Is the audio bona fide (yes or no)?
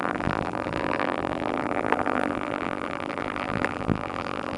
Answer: no